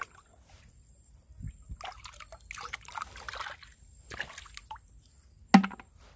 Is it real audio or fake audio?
real